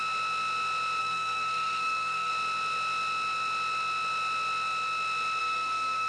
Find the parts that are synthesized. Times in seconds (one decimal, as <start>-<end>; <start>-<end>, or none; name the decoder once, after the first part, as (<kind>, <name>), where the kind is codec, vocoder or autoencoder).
1.0-2.3 (codec, SNAC); 5.4-6.1